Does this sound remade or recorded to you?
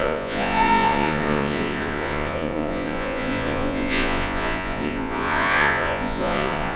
remade